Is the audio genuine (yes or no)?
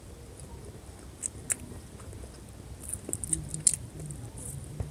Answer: yes